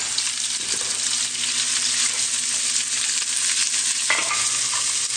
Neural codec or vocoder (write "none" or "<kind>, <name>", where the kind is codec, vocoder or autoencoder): none